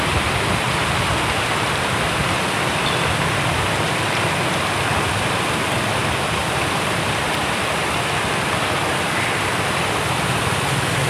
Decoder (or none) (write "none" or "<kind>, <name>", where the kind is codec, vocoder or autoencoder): vocoder, BigVGAN v2